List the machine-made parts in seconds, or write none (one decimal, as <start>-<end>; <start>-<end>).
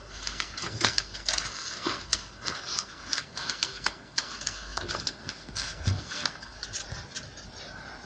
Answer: 0.0-6.6